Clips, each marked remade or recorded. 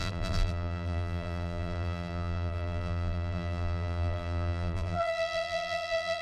remade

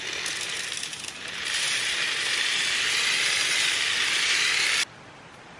recorded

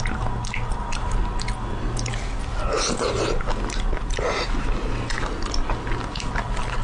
recorded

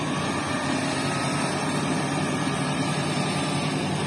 remade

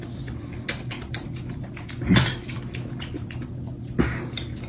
recorded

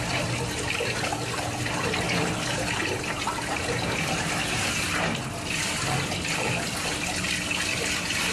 recorded